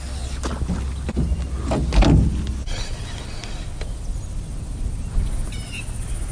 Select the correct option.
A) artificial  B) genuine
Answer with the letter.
B